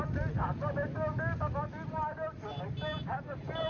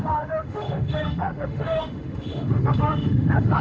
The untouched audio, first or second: first